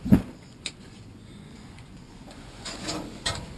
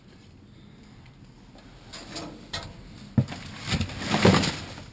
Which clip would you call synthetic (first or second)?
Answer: first